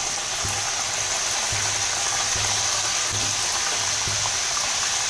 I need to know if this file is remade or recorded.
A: recorded